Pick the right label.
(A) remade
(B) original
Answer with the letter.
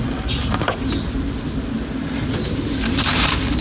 B